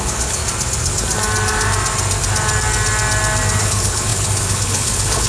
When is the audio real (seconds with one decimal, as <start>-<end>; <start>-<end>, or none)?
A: 0.4-3.6